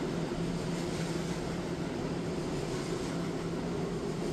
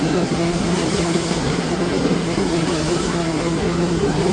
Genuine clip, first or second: first